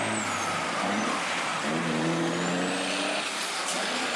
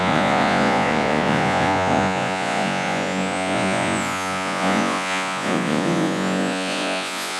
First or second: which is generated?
second